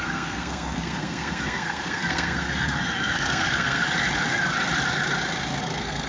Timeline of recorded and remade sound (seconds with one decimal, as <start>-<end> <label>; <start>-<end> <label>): 0.0-3.8 remade; 3.8-5.6 recorded; 5.6-6.1 remade